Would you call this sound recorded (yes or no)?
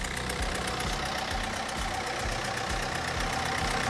yes